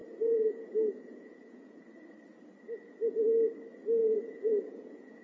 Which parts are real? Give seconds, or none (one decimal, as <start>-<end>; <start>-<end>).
1.8-4.0